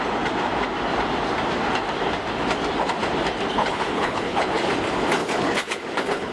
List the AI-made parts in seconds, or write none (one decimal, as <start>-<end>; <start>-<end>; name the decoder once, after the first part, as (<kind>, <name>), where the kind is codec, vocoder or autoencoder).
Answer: 3.5-4.7 (codec, HILCodec); 5.2-6.3